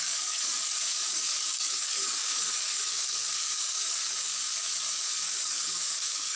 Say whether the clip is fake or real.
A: fake